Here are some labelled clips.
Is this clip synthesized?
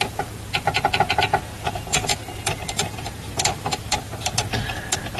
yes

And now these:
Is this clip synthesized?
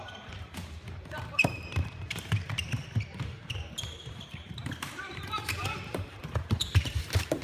yes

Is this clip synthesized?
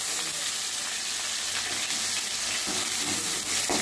no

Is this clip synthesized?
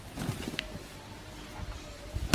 yes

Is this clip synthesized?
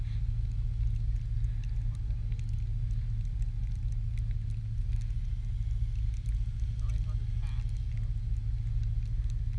no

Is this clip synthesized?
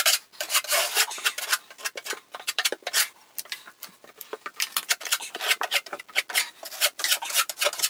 yes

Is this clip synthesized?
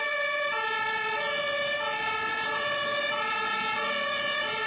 no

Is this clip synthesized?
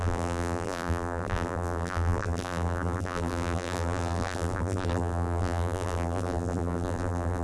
yes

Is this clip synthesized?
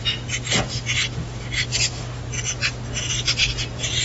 no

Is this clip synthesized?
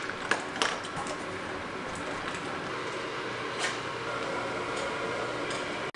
no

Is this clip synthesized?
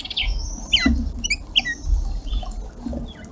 no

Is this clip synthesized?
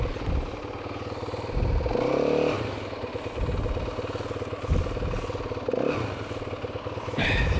no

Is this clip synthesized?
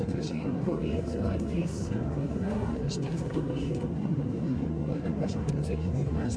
yes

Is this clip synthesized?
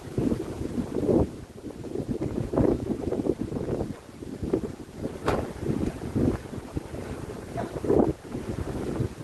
yes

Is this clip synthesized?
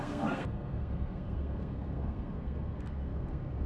yes